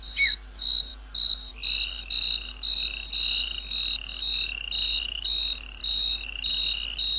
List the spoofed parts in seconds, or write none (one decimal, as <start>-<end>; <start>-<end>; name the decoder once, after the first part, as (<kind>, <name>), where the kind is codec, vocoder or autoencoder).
none